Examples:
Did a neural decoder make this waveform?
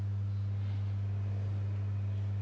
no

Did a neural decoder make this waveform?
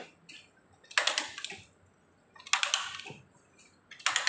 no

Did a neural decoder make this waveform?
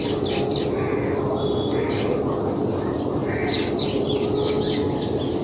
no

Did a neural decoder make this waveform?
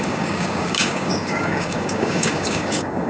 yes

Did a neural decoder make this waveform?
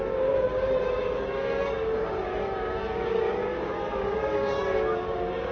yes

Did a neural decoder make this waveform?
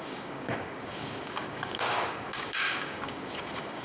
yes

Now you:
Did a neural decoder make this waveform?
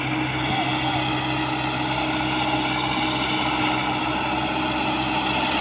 no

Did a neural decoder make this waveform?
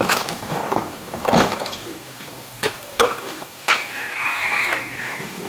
yes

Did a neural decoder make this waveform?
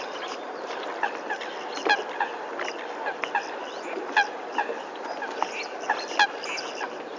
no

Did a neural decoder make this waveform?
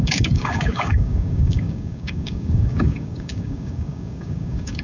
yes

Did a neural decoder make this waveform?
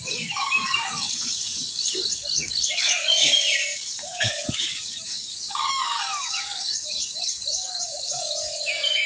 yes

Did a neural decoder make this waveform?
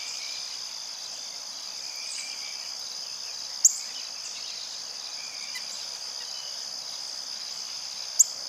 no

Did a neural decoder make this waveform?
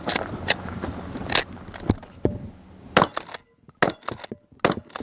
no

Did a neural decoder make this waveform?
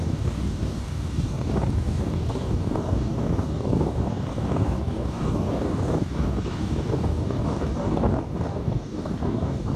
yes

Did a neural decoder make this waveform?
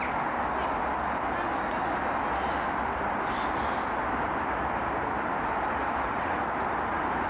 no